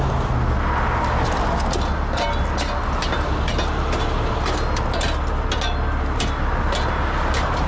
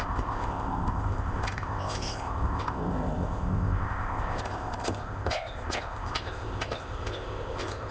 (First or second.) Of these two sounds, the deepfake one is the second